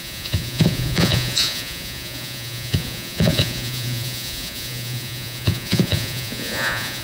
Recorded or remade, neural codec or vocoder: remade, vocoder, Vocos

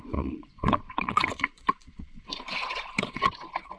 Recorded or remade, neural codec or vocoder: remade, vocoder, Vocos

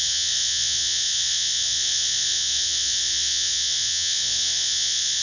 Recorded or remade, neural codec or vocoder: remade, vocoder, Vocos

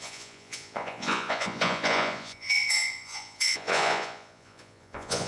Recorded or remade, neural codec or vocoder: remade, vocoder, Vocos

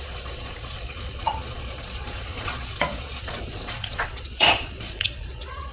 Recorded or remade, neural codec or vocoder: remade, vocoder, Vocos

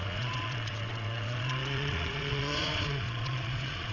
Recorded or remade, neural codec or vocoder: remade, vocoder, Vocos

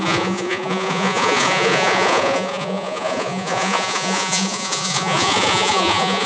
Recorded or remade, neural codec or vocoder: remade, vocoder, Vocos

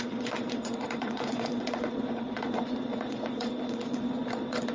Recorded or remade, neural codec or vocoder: remade, vocoder, Vocos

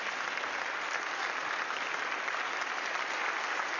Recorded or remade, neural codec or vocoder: recorded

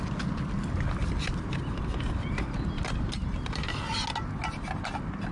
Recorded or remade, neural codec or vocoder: recorded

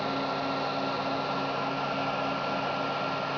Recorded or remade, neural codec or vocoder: recorded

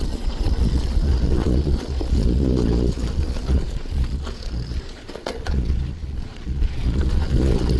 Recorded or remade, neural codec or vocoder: remade, vocoder, Vocos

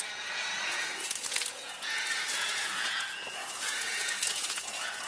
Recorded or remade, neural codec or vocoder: remade, vocoder, Vocos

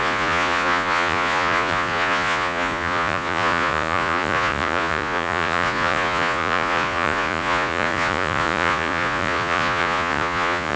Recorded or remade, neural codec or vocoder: remade, vocoder, Vocos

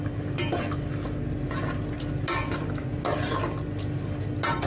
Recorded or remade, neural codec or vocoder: recorded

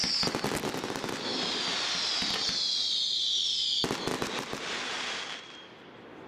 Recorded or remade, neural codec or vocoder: recorded